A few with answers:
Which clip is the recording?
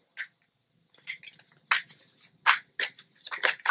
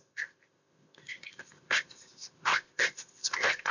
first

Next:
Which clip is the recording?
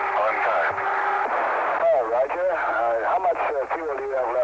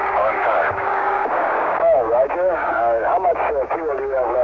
first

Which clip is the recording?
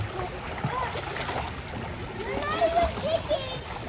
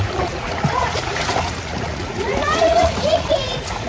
first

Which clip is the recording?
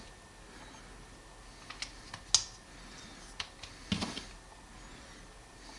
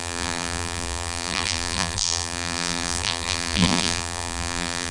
first